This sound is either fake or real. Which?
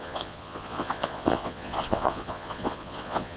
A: fake